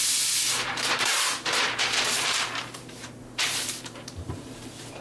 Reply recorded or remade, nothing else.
remade